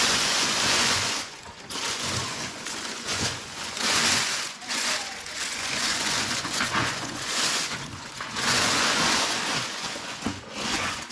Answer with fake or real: fake